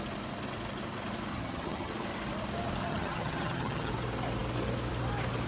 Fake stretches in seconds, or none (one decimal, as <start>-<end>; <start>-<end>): 1.3-1.9; 2.8-3.9